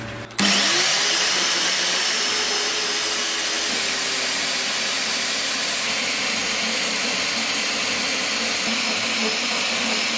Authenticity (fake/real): real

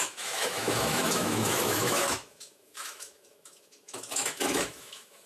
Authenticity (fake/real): fake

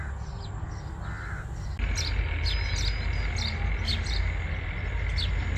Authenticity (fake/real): real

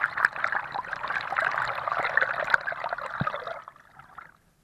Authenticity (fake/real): real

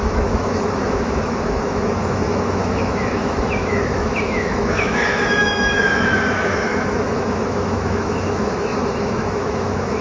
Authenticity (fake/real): fake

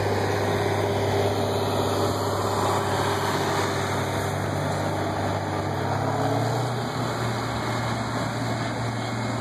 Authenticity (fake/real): real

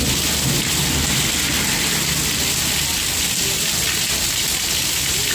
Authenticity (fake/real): real